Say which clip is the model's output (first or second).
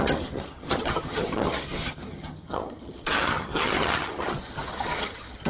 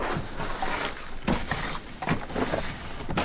first